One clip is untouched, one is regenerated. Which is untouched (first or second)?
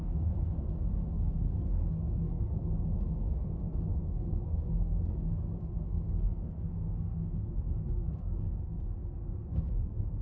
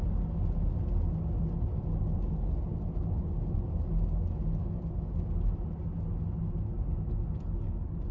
second